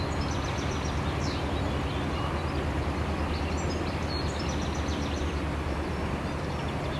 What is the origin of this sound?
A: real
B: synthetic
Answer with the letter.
A